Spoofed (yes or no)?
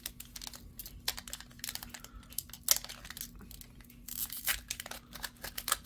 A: no